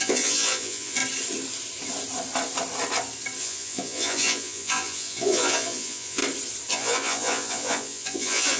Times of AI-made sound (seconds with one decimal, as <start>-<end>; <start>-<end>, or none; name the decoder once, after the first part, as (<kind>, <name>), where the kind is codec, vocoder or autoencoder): 0.0-1.0 (vocoder, Vocos); 3.4-6.2; 6.7-8.6